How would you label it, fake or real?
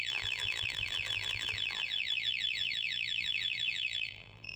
fake